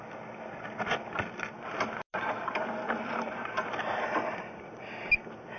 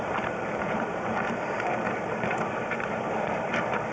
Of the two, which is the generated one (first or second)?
second